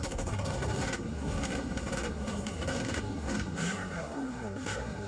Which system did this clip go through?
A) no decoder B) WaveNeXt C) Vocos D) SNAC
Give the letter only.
D